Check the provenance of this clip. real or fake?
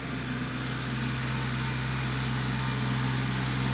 real